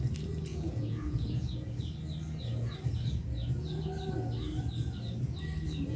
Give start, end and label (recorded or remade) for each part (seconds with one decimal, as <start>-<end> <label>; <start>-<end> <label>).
0.0-0.5 recorded; 0.5-1.8 remade; 1.8-6.0 recorded